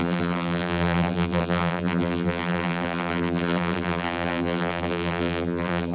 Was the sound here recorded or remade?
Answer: remade